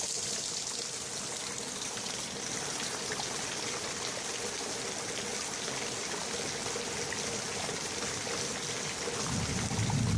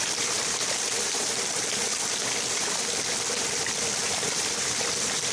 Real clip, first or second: first